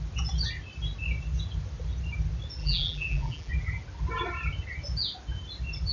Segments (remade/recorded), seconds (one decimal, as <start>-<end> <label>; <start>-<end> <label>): 0.0-2.6 recorded; 2.6-3.5 remade; 3.5-5.9 recorded